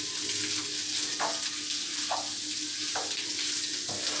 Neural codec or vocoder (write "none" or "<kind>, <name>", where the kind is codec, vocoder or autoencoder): none